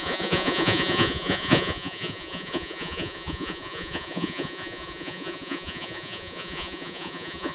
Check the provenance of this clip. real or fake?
fake